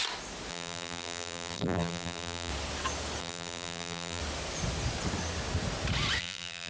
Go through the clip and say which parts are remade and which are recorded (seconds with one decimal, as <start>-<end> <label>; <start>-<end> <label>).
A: 0.0-0.5 recorded; 0.5-2.5 remade; 2.5-3.2 recorded; 3.2-4.2 remade; 4.2-6.2 recorded; 6.2-6.7 remade